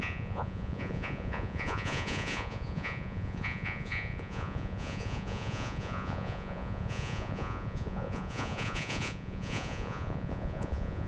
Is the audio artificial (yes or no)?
yes